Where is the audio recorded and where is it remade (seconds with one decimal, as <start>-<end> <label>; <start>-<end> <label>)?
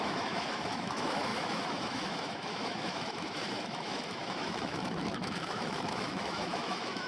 0.0-7.1 remade